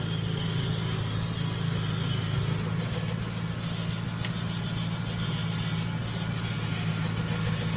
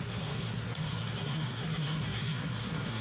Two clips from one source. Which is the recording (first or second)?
first